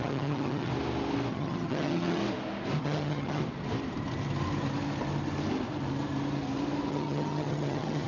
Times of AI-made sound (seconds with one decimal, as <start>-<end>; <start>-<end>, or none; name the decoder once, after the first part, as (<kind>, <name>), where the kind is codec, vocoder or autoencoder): 0.0-0.7 (vocoder, HiFi-GAN); 1.3-2.2; 2.8-3.4; 6.9-8.1